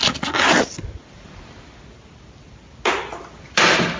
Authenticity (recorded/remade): recorded